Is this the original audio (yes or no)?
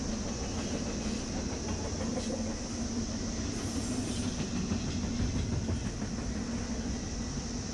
yes